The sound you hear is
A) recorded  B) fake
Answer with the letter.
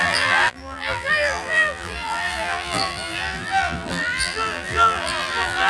B